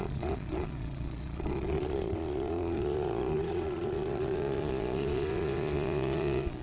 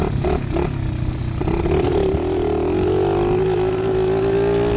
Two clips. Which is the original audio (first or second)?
second